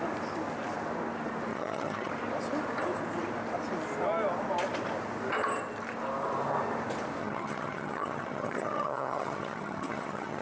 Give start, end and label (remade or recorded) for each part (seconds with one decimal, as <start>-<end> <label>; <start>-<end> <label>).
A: 0.0-1.5 recorded; 1.5-2.1 remade; 2.1-7.2 recorded; 7.2-10.4 remade